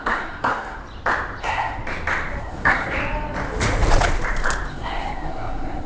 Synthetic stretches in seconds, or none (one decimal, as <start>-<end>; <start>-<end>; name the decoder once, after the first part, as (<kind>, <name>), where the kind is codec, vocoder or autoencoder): 0.0-0.8 (codec, SNAC); 1.4-1.8; 2.4-3.0; 4.7-5.9